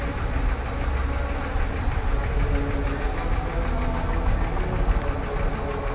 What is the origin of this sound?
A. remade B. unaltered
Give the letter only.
B